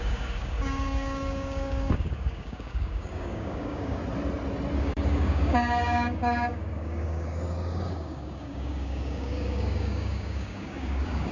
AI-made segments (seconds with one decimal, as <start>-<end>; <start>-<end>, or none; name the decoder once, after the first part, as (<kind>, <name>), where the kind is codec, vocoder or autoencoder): 0.0-4.0 (codec, DAC); 4.8-11.3